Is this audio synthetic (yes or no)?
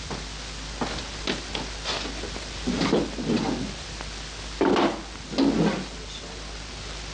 no